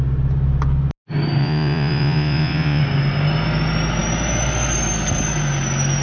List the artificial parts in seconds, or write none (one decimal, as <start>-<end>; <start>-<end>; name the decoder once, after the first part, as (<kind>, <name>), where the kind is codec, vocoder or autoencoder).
1.4-2.8 (vocoder, Vocos)